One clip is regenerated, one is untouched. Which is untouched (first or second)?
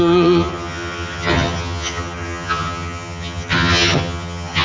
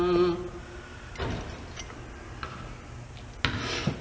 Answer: second